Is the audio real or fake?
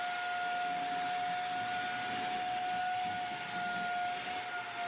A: real